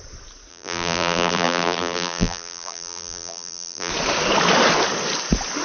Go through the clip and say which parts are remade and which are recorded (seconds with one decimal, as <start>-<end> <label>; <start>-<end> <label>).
0.0-0.5 recorded; 0.5-3.9 remade; 3.9-5.6 recorded